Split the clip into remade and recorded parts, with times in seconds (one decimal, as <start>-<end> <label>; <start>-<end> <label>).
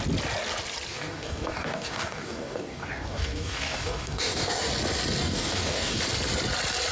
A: 0.0-0.9 recorded; 0.9-4.7 remade; 4.7-5.2 recorded; 5.2-6.0 remade; 6.0-6.9 recorded